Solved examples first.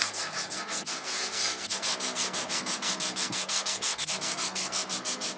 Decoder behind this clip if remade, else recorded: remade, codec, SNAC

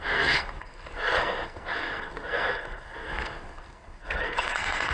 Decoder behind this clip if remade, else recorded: remade, codec, SNAC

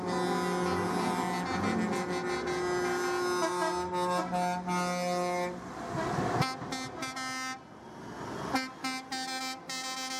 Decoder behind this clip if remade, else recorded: recorded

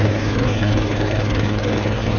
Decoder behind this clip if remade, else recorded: remade, codec, SNAC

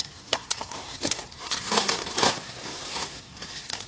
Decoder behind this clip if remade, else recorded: remade, codec, SNAC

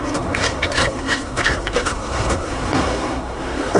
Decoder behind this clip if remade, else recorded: remade, codec, SNAC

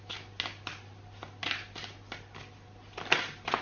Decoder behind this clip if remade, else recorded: recorded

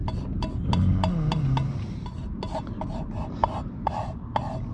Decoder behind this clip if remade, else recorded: recorded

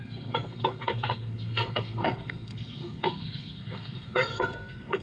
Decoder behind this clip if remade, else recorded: remade, codec, SNAC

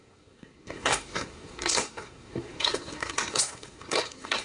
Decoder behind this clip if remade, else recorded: remade, codec, SNAC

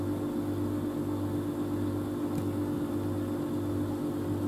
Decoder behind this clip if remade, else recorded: recorded